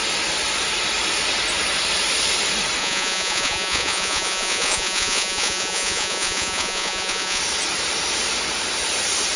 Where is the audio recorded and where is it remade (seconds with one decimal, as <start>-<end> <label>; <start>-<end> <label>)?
0.0-2.8 recorded; 2.8-7.4 remade; 7.4-9.4 recorded